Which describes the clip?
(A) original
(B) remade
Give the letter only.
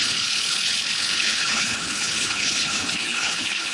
B